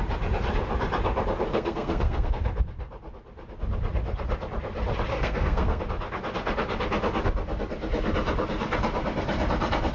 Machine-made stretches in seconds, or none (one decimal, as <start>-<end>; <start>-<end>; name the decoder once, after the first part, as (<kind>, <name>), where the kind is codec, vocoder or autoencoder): 1.5-2.3 (codec, SNAC); 5.1-5.8